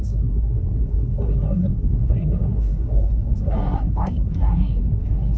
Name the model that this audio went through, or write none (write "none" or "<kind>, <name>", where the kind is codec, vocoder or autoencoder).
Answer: codec, SNAC